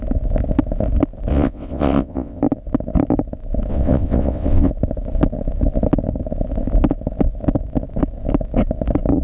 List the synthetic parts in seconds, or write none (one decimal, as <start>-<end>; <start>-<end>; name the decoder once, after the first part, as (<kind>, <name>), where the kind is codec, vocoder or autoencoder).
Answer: 1.3-2.4 (vocoder, WaveNeXt); 3.7-4.7